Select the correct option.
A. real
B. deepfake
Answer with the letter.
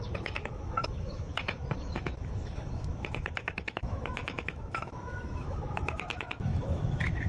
B